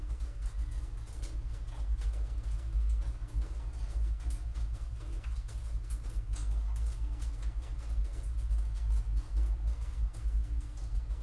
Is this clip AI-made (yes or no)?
yes